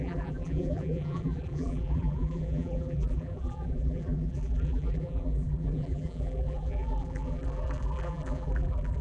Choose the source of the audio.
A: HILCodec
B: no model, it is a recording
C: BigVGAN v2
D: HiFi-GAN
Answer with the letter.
C